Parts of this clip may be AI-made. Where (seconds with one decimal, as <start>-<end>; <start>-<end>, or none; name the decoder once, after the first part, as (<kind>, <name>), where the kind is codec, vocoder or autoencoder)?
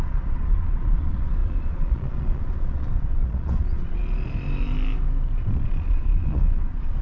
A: 0.0-4.0 (vocoder, Vocos); 5.4-7.0